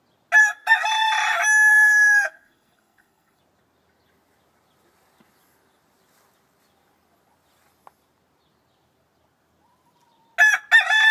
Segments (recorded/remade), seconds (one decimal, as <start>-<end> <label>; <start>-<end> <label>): 0.0-0.4 recorded; 0.4-0.9 remade; 0.9-1.7 recorded; 1.7-3.4 remade; 3.4-11.1 recorded